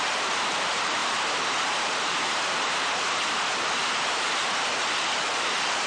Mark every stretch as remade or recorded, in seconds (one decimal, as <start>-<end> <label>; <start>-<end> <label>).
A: 0.0-5.9 remade